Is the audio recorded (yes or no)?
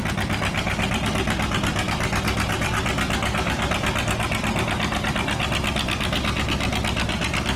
yes